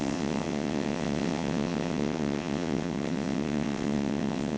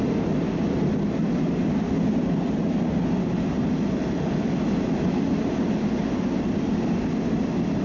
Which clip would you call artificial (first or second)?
first